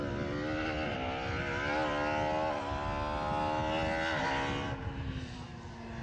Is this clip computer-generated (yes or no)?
no